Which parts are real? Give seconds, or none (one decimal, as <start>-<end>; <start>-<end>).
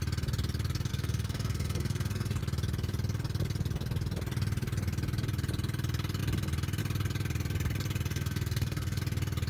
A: 0.0-0.9; 2.4-8.1; 9.0-9.5